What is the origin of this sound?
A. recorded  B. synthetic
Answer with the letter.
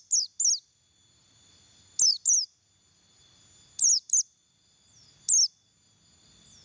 A